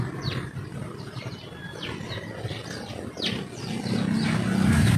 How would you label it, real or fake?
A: real